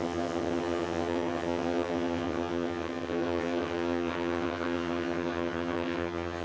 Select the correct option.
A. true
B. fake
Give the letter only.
B